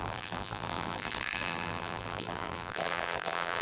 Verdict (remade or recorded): remade